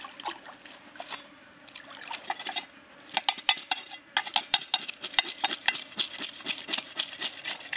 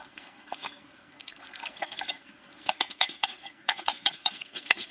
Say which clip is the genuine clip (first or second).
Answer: first